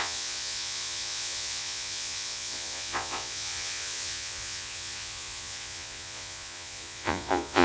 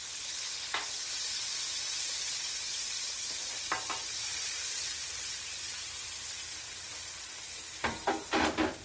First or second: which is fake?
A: first